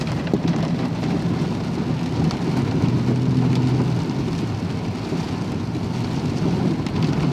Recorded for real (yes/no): yes